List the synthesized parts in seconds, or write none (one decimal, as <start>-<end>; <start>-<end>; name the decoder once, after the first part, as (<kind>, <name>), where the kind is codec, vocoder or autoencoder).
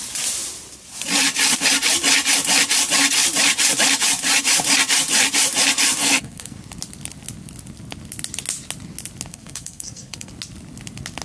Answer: 6.0-6.6 (codec, SNAC); 9.3-10.3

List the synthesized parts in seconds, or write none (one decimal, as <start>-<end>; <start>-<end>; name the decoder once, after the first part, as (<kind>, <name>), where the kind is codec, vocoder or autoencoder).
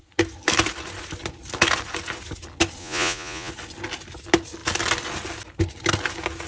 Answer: 2.8-3.5 (vocoder, Vocos)